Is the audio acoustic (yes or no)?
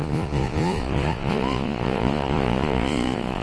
no